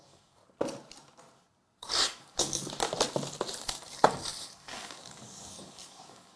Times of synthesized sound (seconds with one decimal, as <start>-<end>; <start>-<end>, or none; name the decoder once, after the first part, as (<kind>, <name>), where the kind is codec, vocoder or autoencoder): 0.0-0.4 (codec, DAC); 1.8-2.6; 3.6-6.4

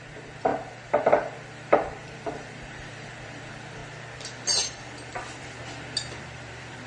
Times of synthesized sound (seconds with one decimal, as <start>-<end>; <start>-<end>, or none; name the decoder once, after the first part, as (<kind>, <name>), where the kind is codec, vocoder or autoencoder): 0.0-3.8 (vocoder, BigVGAN v2); 4.7-5.6; 6.2-6.9

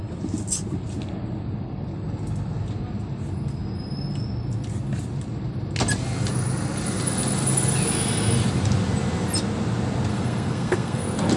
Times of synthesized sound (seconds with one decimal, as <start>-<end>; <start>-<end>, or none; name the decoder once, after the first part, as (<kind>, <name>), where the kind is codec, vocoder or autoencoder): 10.1-11.0 (codec, SNAC)

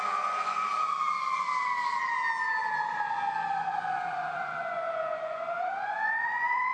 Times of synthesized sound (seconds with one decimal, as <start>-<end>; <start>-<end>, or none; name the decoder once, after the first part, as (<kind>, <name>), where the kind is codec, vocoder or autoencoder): 0.0-1.5 (vocoder, Vocos); 3.6-6.7